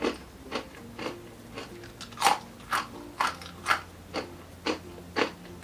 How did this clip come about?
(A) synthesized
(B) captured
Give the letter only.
B